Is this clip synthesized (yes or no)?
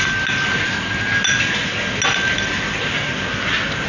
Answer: no